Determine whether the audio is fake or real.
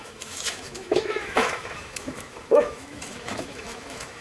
fake